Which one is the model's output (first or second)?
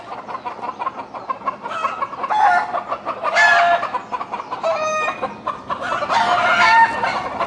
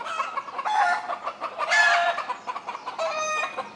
second